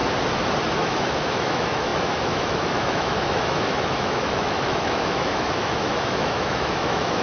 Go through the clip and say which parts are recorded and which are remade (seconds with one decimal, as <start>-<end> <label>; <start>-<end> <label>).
0.0-0.7 recorded; 0.7-7.2 remade